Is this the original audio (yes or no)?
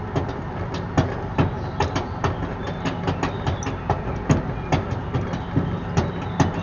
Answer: yes